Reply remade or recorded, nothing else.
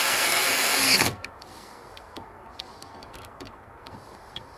remade